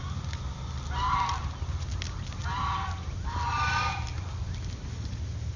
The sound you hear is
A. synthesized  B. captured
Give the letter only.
B